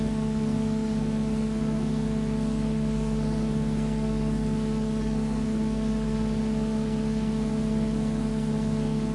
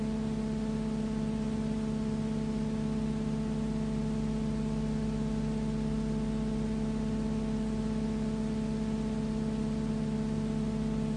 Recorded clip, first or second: second